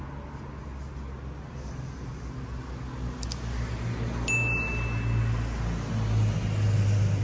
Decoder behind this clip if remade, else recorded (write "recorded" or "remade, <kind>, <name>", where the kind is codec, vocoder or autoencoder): recorded